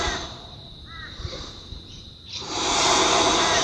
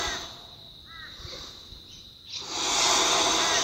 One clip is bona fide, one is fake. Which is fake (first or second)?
first